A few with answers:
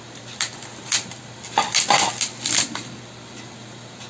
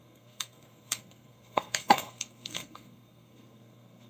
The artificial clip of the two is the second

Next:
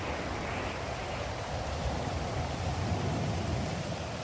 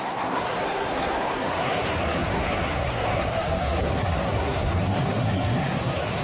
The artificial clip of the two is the second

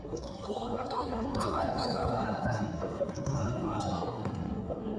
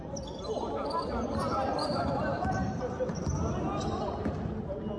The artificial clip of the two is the first